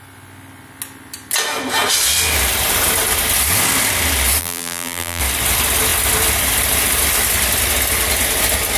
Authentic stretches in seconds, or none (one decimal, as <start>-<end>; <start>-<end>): 0.0-4.4; 5.2-8.8